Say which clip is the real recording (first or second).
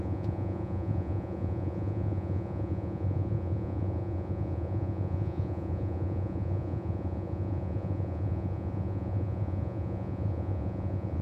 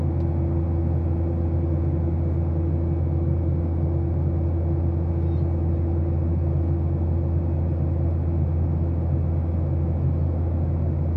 second